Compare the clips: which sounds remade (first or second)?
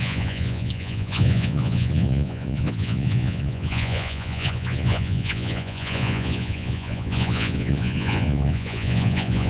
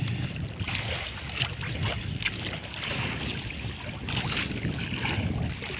first